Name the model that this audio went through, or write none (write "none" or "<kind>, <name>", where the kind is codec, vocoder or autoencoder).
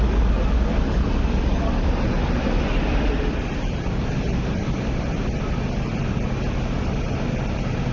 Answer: none